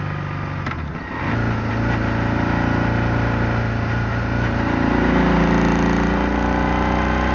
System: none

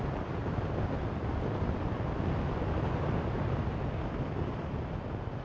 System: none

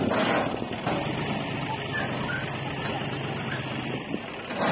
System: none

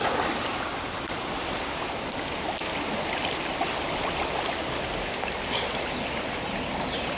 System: none